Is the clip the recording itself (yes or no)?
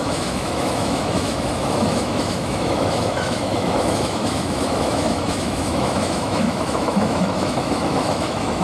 no